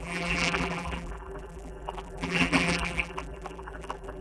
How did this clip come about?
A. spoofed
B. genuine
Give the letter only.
A